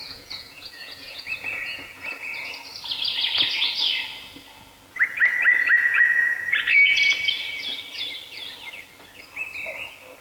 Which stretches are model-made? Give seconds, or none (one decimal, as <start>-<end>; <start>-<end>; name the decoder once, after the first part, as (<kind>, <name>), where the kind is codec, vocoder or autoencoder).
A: 0.0-2.5 (vocoder, Vocos); 5.8-6.9